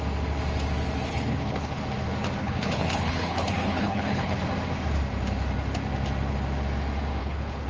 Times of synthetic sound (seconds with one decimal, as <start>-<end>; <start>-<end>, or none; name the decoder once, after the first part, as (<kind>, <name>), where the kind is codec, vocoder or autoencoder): 1.1-1.8 (codec, HILCodec); 2.4-4.4; 7.2-7.7

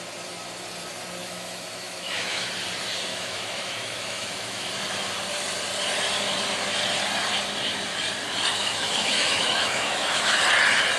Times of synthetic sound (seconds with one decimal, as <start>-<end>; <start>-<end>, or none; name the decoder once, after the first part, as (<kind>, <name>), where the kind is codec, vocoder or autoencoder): 1.2-2.5 (autoencoder, DAC-VAE); 3.1-4.7; 8.6-10.4

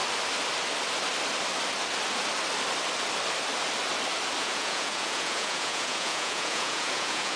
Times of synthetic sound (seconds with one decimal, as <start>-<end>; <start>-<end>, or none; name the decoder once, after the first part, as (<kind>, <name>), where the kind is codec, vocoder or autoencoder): 4.4-7.4 (vocoder, Vocos)

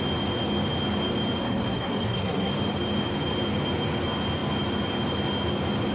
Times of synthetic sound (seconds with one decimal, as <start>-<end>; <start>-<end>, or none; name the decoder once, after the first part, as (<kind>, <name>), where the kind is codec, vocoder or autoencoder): 1.4-2.5 (codec, SNAC)

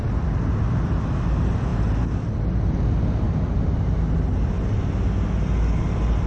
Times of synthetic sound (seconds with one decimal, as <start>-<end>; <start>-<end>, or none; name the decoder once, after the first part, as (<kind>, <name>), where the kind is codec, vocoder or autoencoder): none